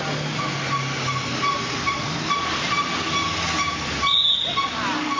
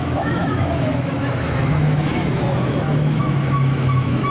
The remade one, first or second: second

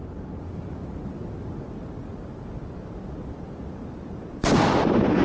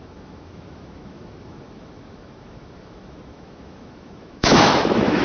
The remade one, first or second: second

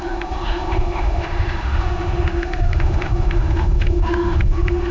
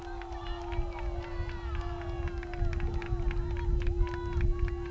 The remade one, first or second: first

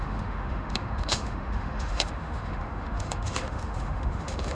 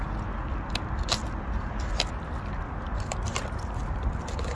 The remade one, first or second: first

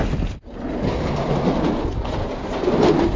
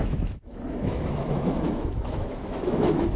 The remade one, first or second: second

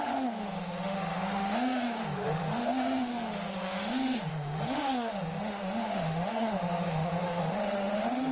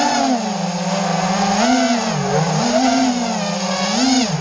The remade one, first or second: first